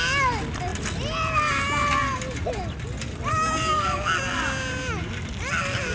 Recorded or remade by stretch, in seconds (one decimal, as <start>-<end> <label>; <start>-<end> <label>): 0.0-5.9 recorded